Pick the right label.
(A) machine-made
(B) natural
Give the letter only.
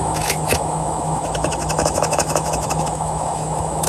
A